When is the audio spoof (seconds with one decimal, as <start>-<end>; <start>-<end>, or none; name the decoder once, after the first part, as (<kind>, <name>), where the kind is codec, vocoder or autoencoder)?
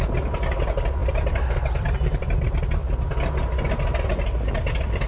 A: 1.0-2.4 (vocoder, BigVGAN v2); 2.8-3.7